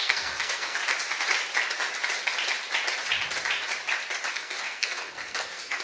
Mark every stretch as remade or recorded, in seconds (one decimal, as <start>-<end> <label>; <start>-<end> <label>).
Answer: 0.0-0.8 remade; 0.8-4.3 recorded; 4.3-5.8 remade